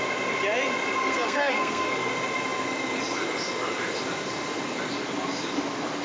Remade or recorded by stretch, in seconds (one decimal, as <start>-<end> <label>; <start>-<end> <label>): 0.0-1.0 recorded; 1.0-2.1 remade; 2.1-6.0 recorded